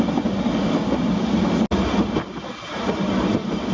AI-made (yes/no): no